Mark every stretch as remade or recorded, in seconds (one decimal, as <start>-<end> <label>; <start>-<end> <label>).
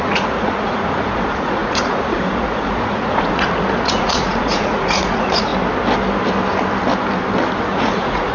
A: 0.0-5.5 remade; 5.5-7.6 recorded; 7.6-8.3 remade